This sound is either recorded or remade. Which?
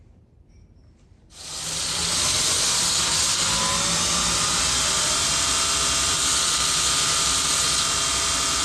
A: recorded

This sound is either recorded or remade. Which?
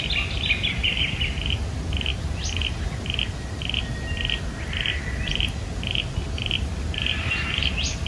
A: recorded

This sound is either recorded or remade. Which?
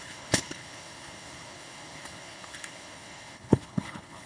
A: remade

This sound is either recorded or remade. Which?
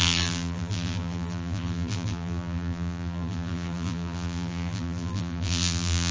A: remade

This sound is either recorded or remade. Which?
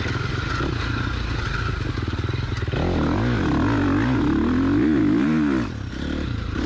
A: recorded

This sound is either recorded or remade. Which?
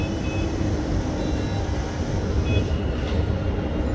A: recorded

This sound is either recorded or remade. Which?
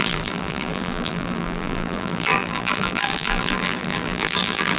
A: remade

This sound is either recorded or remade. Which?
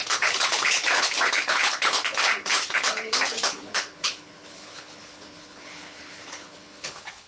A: remade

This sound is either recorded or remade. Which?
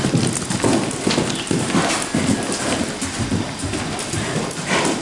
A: recorded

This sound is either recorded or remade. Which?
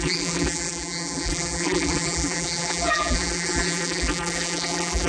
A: remade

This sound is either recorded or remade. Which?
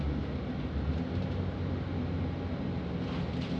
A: recorded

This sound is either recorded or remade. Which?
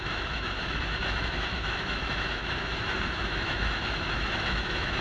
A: remade